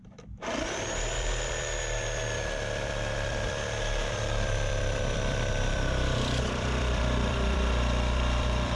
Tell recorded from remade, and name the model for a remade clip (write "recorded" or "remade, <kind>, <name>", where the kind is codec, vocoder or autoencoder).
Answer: remade, vocoder, BigVGAN v2